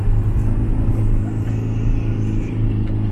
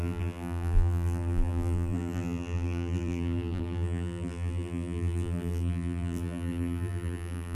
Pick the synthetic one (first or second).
second